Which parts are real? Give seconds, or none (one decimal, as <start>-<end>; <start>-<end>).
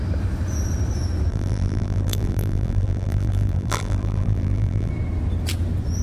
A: 0.0-1.3; 4.9-6.0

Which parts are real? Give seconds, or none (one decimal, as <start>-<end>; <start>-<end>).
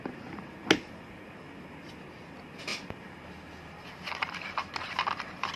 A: 0.0-5.6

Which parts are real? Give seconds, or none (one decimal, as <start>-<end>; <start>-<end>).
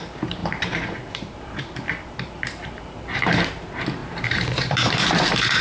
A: none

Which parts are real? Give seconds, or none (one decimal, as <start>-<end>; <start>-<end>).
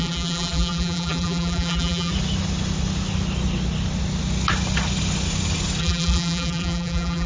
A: 2.1-5.8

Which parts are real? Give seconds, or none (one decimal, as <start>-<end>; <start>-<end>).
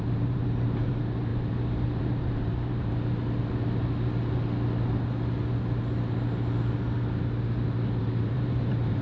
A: 1.3-2.0; 2.9-8.0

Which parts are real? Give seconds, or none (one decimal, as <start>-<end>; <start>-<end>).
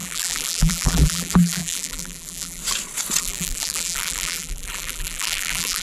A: 2.6-3.2